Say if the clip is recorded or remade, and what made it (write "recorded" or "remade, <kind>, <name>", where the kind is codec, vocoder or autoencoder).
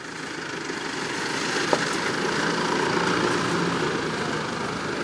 recorded